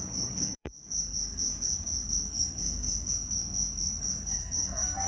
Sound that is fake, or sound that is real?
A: fake